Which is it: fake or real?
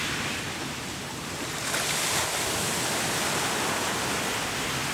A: real